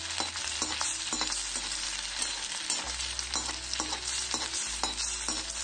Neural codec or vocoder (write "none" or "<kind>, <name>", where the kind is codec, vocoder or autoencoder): none